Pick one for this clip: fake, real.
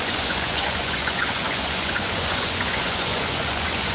fake